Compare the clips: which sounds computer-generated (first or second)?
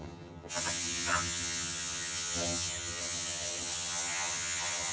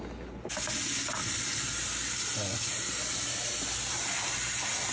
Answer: first